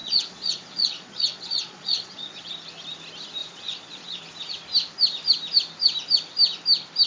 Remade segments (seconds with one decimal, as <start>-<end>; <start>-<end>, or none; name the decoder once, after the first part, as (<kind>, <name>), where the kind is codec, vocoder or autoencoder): 0.0-2.5 (vocoder, Vocos); 3.4-4.2

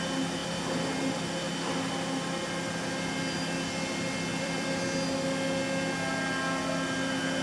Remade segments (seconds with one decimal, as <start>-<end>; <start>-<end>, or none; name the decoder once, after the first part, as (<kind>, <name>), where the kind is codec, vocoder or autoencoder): 4.3-4.8 (vocoder, BigVGAN v2)